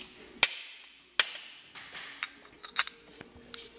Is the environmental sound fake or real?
real